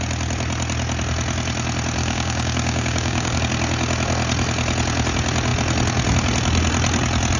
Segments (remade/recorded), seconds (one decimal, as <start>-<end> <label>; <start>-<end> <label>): 0.0-2.0 recorded; 2.0-3.4 remade; 3.4-7.4 recorded

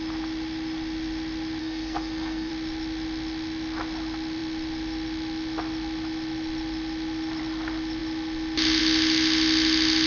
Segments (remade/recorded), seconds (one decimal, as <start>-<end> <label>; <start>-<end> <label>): 0.0-1.6 recorded; 1.6-2.5 remade; 2.5-10.1 recorded

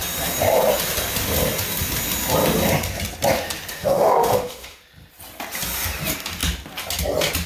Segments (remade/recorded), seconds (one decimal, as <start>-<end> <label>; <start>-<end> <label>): 0.0-3.7 recorded; 3.7-4.8 remade; 4.8-7.5 recorded

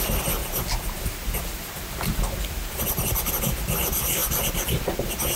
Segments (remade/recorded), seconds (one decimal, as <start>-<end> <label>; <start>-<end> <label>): 0.0-0.4 recorded; 0.4-3.3 remade; 3.3-5.4 recorded